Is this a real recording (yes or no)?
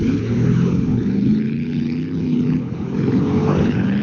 no